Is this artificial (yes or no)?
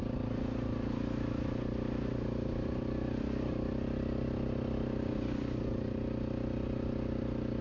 no